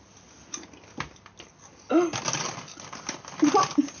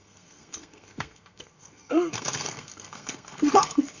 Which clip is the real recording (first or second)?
first